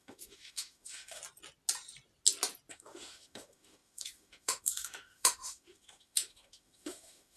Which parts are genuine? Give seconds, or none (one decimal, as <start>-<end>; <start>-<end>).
1.2-2.7

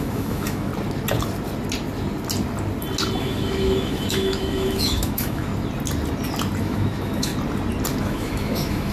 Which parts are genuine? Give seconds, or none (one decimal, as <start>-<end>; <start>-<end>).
0.7-3.2; 5.5-6.6; 7.3-8.0